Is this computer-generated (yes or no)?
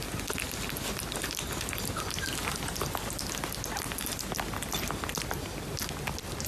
no